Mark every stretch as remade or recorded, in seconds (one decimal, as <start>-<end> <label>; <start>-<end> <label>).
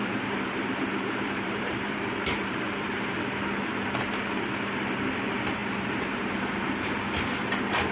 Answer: 0.0-3.2 remade; 3.2-5.6 recorded; 5.6-6.9 remade; 6.9-7.9 recorded